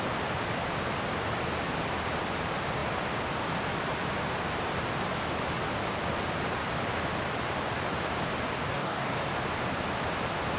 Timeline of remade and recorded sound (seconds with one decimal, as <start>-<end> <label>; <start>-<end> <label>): 0.0-8.6 recorded; 8.6-9.2 remade; 9.2-10.6 recorded